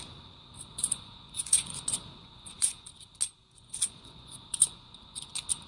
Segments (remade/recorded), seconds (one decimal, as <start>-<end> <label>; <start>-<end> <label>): 0.0-0.7 recorded; 0.7-2.9 remade; 2.9-3.4 recorded; 3.4-5.3 remade; 5.3-5.7 recorded